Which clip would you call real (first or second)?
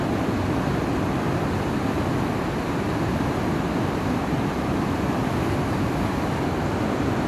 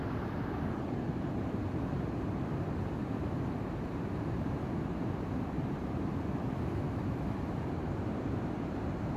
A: first